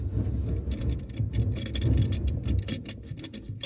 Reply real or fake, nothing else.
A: real